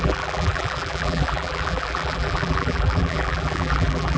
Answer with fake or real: fake